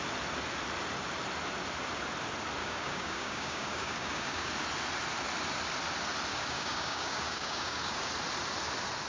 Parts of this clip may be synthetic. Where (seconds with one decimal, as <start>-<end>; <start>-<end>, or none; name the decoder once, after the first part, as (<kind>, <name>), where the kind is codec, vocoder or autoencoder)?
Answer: 2.6-4.5 (codec, DAC); 6.3-8.1